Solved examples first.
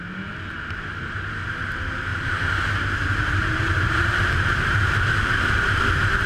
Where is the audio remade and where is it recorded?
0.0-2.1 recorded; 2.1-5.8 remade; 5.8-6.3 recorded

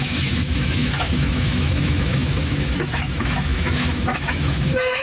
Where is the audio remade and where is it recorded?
0.0-5.0 remade

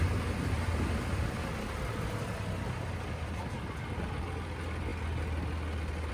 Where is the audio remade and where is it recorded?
0.0-6.1 recorded

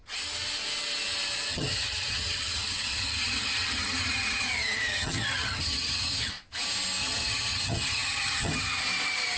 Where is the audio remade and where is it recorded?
0.0-1.5 recorded; 1.5-6.3 remade; 6.3-7.0 recorded; 7.0-8.8 remade; 8.8-9.4 recorded

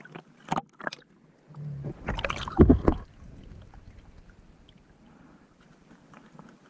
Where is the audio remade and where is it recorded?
0.0-6.7 recorded

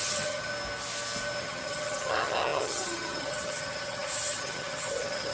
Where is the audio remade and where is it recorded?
0.0-0.5 remade; 0.5-1.4 recorded; 1.4-5.3 remade

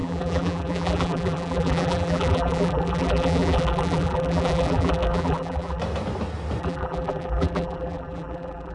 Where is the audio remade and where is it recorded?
0.0-5.8 remade; 5.8-6.6 recorded; 6.6-8.7 remade

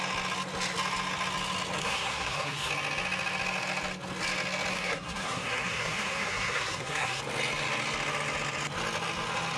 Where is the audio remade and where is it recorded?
0.0-1.8 recorded; 1.8-2.7 remade; 2.7-4.7 recorded; 4.7-7.2 remade; 7.2-9.6 recorded